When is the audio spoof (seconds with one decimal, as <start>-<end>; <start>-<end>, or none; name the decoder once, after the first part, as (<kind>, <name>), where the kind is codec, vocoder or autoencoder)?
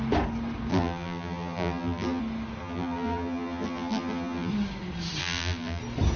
0.7-2.2 (vocoder, BigVGAN v2); 2.6-4.5; 5.2-5.8